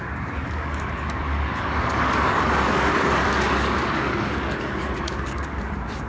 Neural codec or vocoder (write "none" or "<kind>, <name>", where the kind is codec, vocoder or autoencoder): codec, DAC